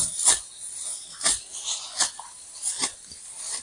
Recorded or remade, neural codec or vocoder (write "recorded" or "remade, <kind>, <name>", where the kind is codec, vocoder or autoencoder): recorded